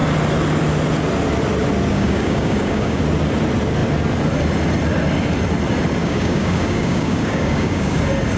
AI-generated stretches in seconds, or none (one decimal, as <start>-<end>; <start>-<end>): 1.9-3.0; 6.0-8.0

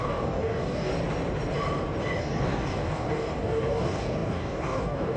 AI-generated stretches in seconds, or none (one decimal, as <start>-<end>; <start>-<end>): 0.0-0.9; 2.2-5.2